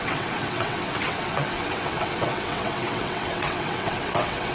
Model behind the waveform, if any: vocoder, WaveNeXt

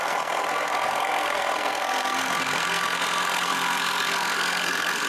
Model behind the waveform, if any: codec, SNAC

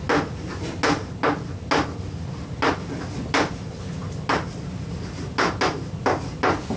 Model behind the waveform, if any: none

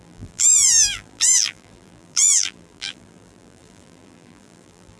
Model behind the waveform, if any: vocoder, BigVGAN v2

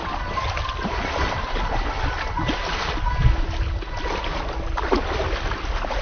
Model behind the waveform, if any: none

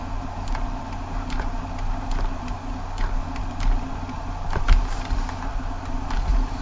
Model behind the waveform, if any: none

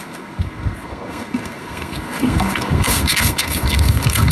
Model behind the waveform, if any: codec, SNAC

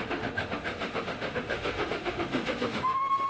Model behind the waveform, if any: autoencoder, DAC-VAE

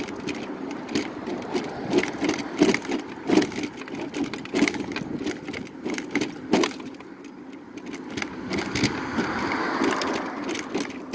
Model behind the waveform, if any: none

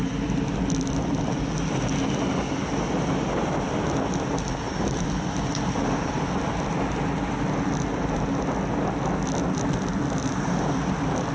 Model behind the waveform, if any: none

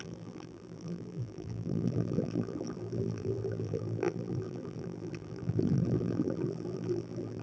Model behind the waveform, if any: vocoder, BigVGAN v2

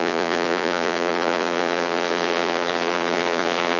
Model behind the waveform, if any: vocoder, Vocos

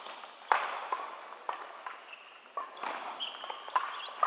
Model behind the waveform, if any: none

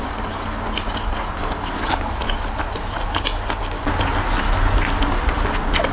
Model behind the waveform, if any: none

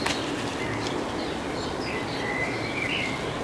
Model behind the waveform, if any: none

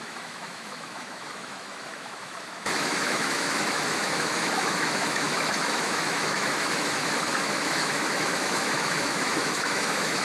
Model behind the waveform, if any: autoencoder, DAC-VAE